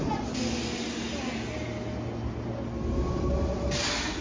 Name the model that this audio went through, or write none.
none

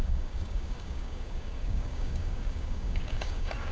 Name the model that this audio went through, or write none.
codec, DAC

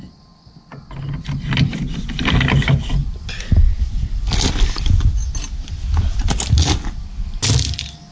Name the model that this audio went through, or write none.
none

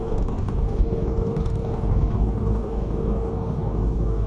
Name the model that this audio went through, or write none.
codec, DAC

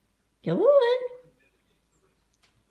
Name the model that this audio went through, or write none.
none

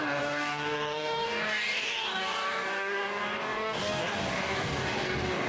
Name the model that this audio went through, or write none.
codec, DAC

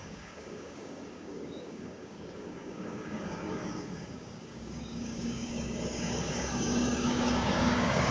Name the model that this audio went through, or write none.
codec, DAC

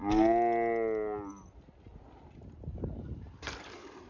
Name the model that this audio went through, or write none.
none